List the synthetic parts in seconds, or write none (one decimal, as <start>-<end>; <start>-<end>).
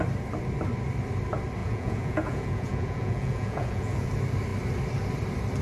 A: 1.6-4.1